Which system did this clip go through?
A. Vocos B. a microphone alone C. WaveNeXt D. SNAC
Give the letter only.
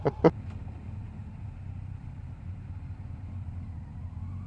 B